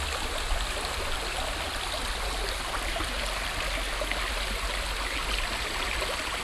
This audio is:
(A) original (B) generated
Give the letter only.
A